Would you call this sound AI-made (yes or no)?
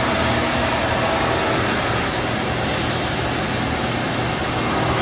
no